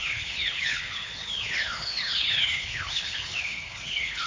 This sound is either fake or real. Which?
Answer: fake